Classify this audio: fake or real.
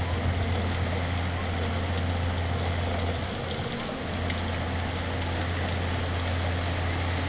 real